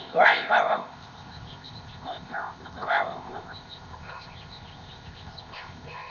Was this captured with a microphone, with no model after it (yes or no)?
no